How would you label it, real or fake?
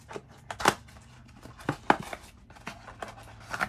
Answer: real